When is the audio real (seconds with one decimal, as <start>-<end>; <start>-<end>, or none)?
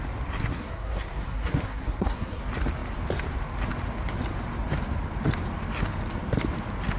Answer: 0.0-0.4; 2.4-7.0